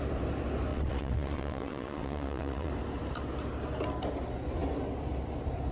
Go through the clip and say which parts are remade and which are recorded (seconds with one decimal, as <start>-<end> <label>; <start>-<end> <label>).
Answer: 0.0-0.7 recorded; 0.7-2.7 remade; 2.7-5.7 recorded